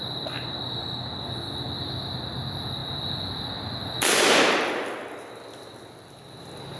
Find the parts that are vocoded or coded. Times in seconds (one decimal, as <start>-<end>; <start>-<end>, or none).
none